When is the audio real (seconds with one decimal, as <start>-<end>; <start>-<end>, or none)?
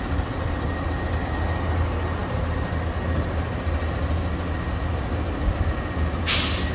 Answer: 0.0-6.7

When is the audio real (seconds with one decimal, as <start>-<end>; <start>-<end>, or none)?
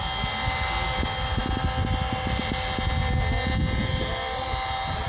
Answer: 0.0-5.1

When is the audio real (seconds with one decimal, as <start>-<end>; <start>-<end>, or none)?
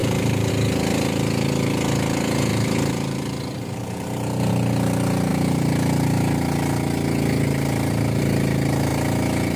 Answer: 0.5-2.5; 4.5-9.6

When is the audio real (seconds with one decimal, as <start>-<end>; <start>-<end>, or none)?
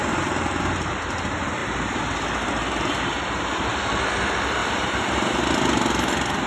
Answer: 0.6-4.6; 5.4-6.5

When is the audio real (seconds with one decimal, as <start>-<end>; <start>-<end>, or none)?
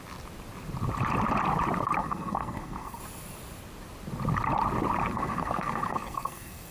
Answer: 0.0-2.0; 3.0-5.0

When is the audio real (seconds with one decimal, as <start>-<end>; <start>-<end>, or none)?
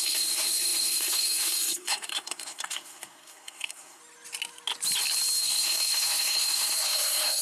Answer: 4.0-5.4